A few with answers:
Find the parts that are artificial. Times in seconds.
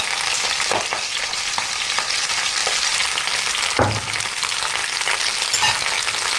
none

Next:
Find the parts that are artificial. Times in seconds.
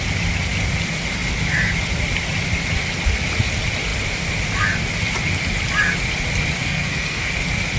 6.6-7.3 (codec, SNAC)